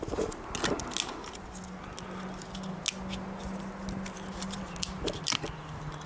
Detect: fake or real real